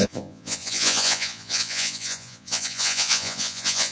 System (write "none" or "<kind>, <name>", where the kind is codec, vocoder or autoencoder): vocoder, Vocos